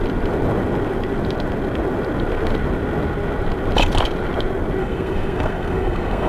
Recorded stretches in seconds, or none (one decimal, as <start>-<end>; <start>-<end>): 0.0-4.8

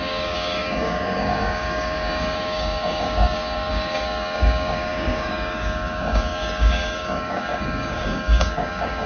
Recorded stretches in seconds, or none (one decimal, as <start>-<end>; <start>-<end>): none

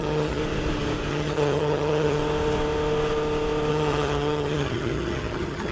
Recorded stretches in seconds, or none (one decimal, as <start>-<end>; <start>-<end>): 0.4-1.1; 2.2-3.7